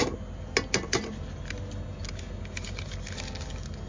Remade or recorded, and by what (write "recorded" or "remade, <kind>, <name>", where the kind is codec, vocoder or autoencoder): recorded